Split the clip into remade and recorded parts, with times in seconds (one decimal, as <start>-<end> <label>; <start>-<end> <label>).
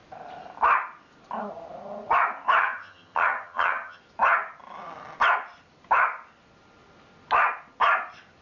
0.0-2.6 recorded; 2.6-4.0 remade; 4.0-8.4 recorded